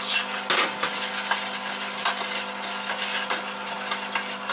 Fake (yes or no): no